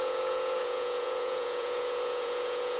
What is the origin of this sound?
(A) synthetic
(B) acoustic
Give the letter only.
A